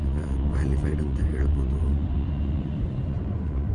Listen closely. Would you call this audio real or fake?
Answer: fake